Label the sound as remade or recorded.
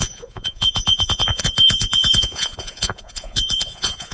remade